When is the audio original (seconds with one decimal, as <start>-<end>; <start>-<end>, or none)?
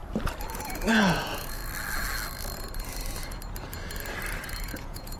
0.0-0.5; 1.6-4.7